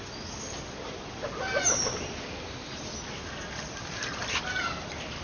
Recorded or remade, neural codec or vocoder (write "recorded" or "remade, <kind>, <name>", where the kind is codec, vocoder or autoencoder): recorded